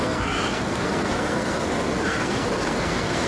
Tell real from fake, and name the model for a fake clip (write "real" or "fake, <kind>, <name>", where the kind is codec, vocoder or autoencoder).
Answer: fake, codec, SNAC